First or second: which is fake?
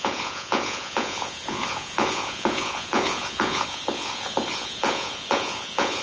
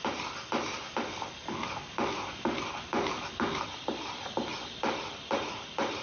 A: first